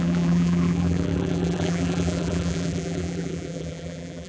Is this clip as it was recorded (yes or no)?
no